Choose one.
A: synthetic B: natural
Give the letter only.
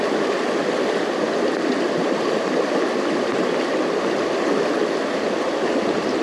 B